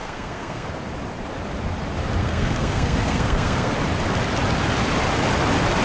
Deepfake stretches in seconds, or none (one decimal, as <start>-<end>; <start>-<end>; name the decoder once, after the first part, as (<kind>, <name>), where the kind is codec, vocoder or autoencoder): 0.0-0.7 (codec, SNAC); 2.2-3.7